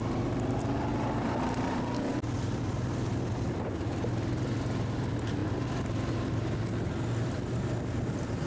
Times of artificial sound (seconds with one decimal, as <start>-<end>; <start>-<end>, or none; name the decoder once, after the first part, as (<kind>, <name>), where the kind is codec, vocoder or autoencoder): none